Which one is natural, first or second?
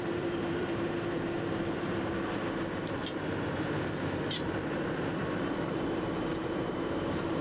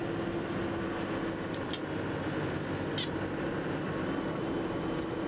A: second